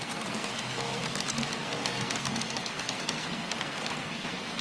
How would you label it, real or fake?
fake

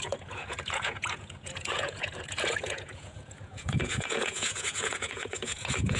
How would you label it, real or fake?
fake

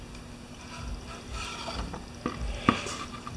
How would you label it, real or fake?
real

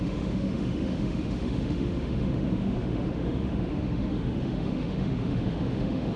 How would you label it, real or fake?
fake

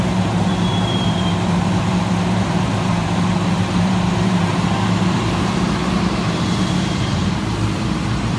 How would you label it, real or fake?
fake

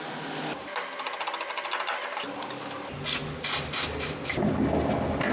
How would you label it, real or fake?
real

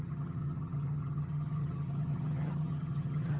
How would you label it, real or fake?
fake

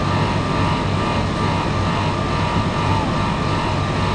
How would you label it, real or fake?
real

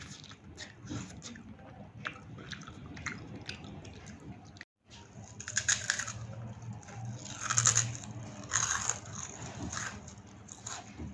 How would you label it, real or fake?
real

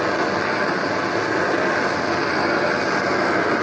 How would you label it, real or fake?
real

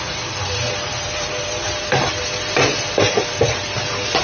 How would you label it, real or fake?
fake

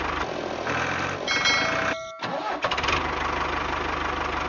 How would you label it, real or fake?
real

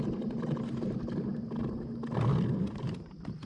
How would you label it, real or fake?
real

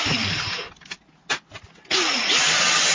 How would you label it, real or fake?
real